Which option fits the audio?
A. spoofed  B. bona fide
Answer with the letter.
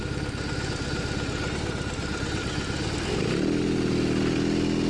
B